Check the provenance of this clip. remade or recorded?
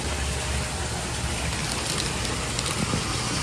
recorded